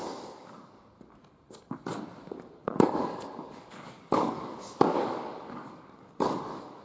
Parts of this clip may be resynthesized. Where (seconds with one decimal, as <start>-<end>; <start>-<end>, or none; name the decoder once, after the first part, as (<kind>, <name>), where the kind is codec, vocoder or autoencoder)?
0.0-0.8 (codec, DAC); 2.6-6.8

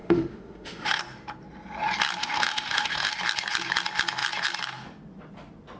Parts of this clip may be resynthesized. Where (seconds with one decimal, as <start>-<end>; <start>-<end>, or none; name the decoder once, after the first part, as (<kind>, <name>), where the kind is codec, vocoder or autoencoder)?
0.0-1.0 (autoencoder, DAC-VAE); 2.2-3.1

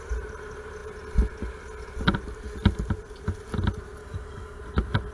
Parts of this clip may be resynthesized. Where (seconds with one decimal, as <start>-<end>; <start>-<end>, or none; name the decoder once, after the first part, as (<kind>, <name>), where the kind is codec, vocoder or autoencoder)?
4.0-4.6 (codec, DAC)

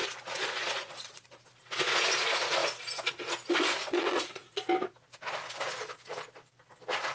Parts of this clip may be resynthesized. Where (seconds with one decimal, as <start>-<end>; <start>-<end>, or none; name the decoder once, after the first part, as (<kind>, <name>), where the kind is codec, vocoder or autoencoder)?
0.0-1.4 (vocoder, Vocos); 3.8-4.7

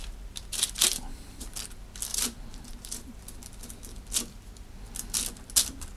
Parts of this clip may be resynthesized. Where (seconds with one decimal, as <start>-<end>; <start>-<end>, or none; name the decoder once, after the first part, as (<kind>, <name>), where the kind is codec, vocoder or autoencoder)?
0.0-1.5 (vocoder, BigVGAN v2); 2.1-3.2

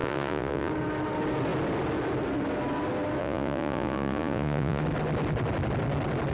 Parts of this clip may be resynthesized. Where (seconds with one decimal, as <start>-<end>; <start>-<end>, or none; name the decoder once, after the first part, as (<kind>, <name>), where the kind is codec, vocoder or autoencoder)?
0.0-0.7 (vocoder, Vocos); 3.2-4.8